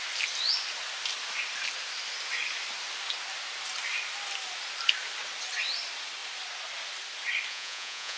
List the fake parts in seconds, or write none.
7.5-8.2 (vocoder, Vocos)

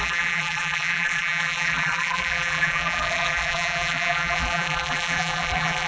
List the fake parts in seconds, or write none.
0.0-5.9 (vocoder, BigVGAN v2)

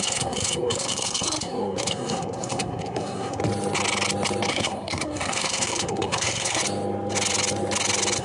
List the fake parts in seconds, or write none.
0.0-3.4 (codec, SNAC); 4.5-6.6

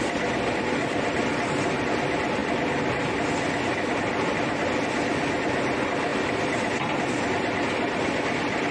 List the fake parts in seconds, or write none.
none

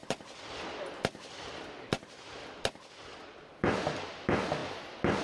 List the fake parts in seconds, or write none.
none

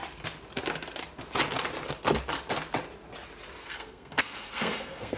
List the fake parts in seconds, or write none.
3.6-5.2 (codec, SNAC)

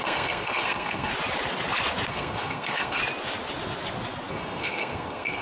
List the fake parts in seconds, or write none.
0.0-1.1 (codec, SNAC); 2.1-3.0; 4.3-5.4